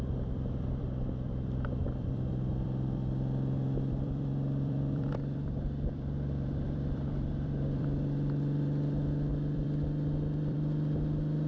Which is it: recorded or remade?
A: remade